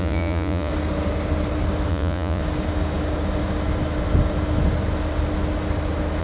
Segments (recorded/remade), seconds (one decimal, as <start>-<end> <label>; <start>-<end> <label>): 0.0-0.7 remade; 0.7-1.9 recorded; 1.9-2.4 remade; 2.4-6.2 recorded